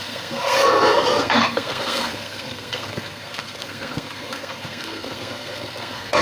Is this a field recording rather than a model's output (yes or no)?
no